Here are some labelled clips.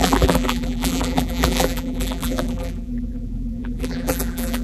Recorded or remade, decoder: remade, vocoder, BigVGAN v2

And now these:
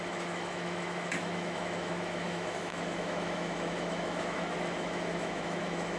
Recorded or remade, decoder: remade, autoencoder, DAC-VAE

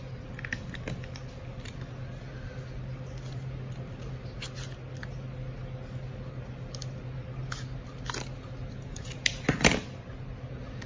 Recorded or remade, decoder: recorded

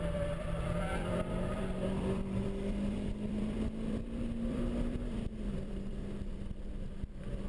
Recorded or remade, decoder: remade, vocoder, BigVGAN v2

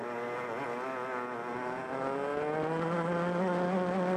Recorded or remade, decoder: recorded